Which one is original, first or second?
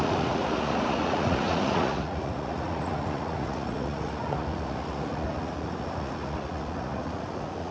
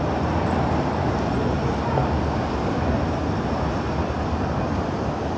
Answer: second